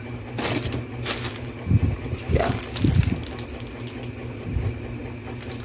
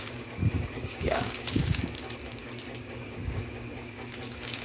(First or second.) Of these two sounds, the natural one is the first